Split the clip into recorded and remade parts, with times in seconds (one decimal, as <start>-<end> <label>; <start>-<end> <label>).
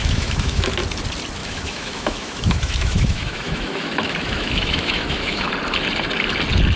0.0-0.7 remade; 0.7-1.4 recorded; 1.4-5.5 remade; 5.5-6.8 recorded